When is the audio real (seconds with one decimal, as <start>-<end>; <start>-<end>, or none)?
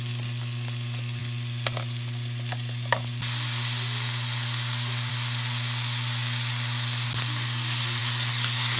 0.0-8.8